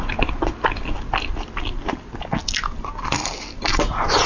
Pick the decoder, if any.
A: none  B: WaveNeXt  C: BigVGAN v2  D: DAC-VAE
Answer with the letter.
A